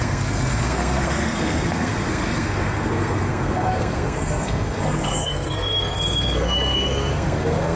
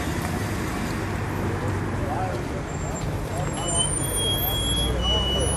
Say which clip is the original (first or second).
second